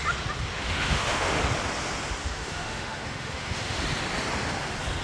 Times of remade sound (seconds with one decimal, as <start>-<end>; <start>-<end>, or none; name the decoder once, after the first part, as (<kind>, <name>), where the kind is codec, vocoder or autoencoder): 0.5-1.4 (autoencoder, DAC-VAE); 2.2-3.8